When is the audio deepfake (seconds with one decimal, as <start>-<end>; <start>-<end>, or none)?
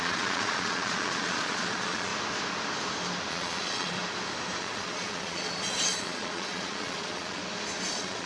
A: 0.0-2.1; 3.3-4.0; 4.6-7.4; 7.9-8.3